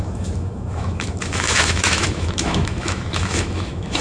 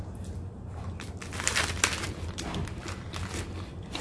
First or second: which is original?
second